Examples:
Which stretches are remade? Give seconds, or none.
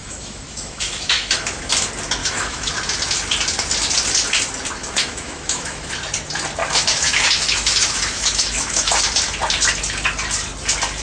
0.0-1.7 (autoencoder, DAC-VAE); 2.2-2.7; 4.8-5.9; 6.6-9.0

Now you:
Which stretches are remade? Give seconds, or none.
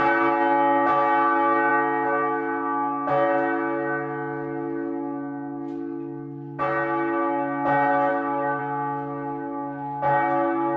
8.1-8.6 (autoencoder, DAC-VAE)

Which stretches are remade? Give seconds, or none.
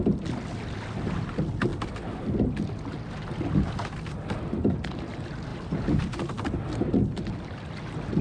none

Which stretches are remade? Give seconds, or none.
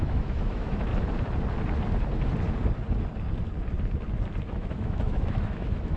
0.0-0.9 (autoencoder, DAC-VAE); 4.4-6.0